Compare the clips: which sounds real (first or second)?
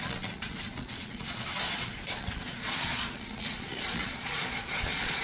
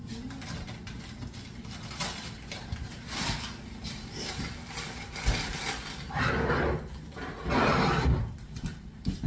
second